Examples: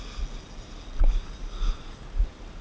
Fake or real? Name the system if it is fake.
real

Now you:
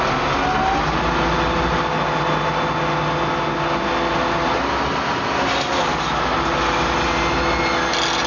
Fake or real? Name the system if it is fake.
real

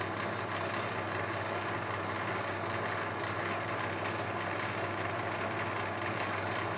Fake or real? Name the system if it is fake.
real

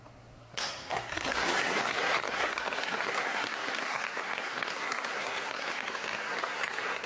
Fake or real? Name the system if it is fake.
fake, codec, SNAC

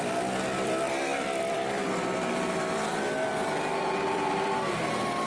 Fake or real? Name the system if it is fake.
fake, vocoder, BigVGAN v2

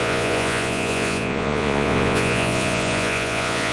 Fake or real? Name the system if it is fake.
fake, vocoder, Vocos